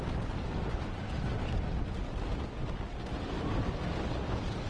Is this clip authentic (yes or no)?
yes